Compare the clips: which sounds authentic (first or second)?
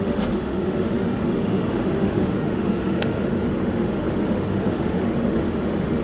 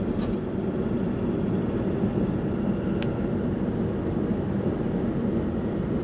second